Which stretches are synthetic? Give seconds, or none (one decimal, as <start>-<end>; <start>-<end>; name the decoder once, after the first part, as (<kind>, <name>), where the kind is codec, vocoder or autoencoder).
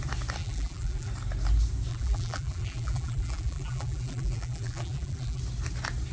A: 0.4-1.1 (vocoder, BigVGAN v2); 1.9-5.4